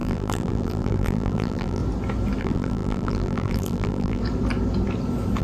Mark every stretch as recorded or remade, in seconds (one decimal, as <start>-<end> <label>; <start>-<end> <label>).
0.0-1.8 remade; 1.8-2.4 recorded; 2.4-4.2 remade; 4.2-5.4 recorded